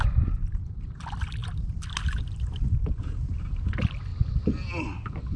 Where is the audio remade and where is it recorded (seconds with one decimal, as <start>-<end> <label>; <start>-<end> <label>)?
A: 0.0-1.4 remade; 1.4-2.6 recorded; 2.6-5.4 remade